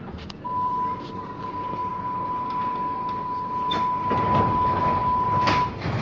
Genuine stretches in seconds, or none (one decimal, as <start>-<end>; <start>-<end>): 0.0-6.0